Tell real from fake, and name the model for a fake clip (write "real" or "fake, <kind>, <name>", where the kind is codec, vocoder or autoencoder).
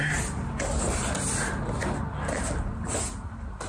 real